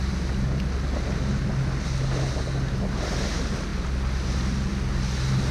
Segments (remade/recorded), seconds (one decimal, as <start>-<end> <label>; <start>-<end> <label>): 0.0-3.7 recorded; 3.7-4.7 remade; 4.7-5.5 recorded